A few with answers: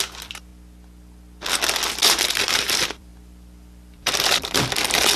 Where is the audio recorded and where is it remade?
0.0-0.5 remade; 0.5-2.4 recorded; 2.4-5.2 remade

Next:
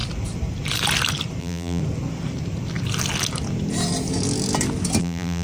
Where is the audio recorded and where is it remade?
0.0-1.4 recorded; 1.4-1.8 remade; 1.8-5.0 recorded; 5.0-5.4 remade

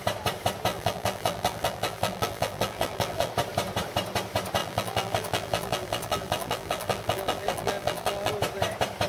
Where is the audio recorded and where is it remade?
0.0-0.7 recorded; 0.7-3.3 remade; 3.3-4.6 recorded; 4.6-8.3 remade; 8.3-9.1 recorded

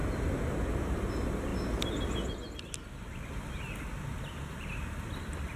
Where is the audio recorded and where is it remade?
0.0-1.1 recorded; 1.1-1.5 remade; 1.5-4.5 recorded; 4.5-5.6 remade